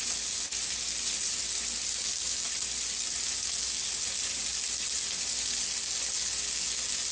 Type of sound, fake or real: real